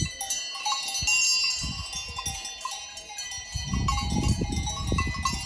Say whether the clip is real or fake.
real